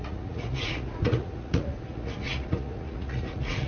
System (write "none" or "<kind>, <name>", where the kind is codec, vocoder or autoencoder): vocoder, Vocos